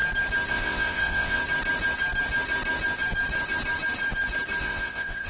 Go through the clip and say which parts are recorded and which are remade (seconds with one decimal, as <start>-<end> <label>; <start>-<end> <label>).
0.0-0.5 recorded; 0.5-1.4 remade; 1.4-4.6 recorded; 4.6-5.3 remade